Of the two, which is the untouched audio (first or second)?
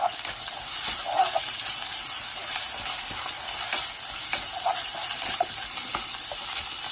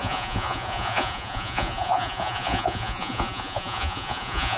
first